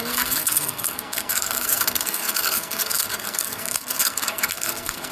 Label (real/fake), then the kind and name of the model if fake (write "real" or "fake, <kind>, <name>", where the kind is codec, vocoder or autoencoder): fake, codec, SNAC